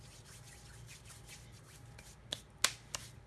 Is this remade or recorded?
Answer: recorded